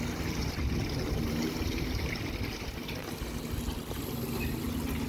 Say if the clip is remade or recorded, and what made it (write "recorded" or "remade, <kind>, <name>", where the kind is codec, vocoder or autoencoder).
recorded